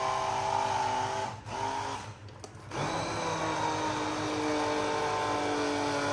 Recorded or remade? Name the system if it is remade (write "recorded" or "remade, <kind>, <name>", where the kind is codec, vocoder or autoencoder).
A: recorded